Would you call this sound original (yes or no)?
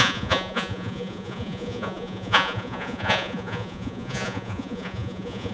no